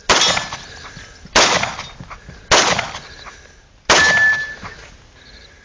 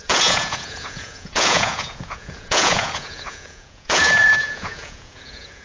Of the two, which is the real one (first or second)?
first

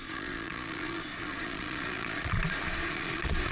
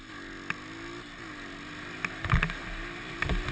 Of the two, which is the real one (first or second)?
second